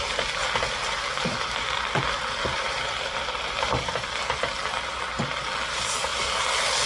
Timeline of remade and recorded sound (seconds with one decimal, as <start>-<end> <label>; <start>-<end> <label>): 0.0-0.4 recorded; 0.4-4.2 remade; 4.2-6.9 recorded